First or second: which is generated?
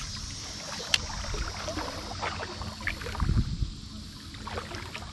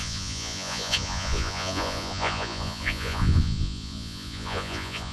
second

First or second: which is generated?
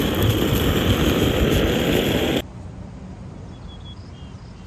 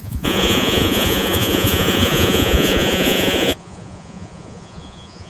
second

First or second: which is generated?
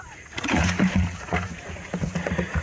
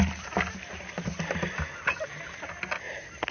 first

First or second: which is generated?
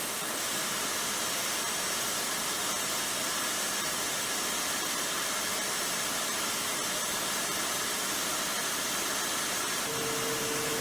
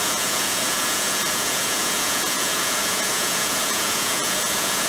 second